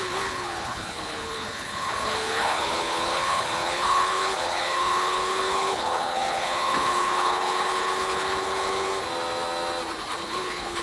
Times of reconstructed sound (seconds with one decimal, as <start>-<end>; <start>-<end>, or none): 0.0-8.9; 10.2-10.8